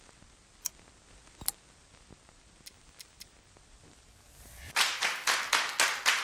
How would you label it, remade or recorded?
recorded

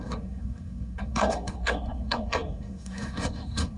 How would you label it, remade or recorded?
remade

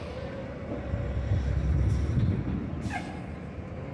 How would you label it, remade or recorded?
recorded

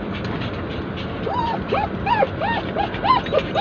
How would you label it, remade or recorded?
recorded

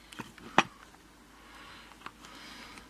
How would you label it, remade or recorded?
recorded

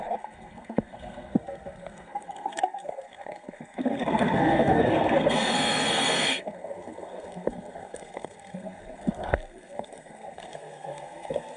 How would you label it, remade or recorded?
remade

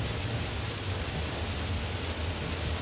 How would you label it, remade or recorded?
recorded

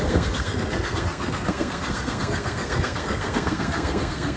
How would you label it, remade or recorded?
remade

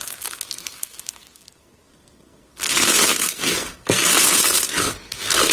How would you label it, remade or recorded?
remade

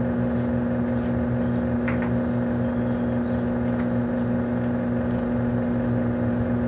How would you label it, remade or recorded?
recorded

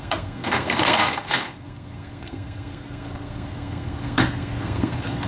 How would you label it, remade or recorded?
remade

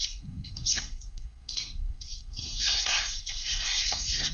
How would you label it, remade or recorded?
remade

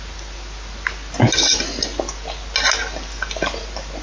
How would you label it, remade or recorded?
recorded